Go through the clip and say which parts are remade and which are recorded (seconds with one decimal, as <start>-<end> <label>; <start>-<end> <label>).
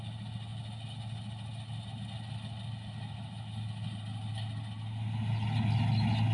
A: 0.0-6.3 recorded